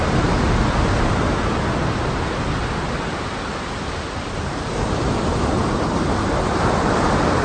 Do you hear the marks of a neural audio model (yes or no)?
no